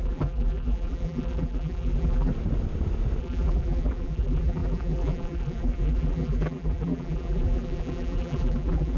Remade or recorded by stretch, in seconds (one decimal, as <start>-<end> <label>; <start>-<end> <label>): 0.0-2.3 remade; 2.3-3.2 recorded; 3.2-9.0 remade